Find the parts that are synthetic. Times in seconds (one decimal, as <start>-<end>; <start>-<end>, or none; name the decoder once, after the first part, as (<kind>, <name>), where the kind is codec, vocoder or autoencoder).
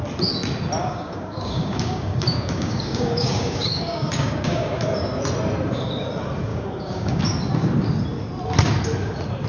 0.8-4.8 (codec, DAC); 6.5-7.2